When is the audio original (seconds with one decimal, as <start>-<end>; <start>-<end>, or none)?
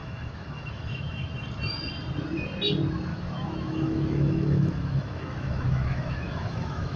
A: 1.3-3.1